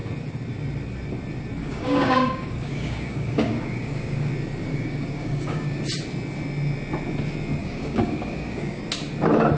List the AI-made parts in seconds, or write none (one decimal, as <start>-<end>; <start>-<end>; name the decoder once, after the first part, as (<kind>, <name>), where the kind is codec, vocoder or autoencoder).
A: 1.6-4.3 (codec, DAC); 4.7-5.8; 7.6-8.8